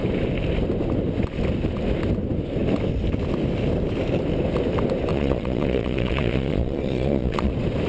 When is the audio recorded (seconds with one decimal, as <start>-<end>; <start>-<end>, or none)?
0.0-5.1; 7.5-7.9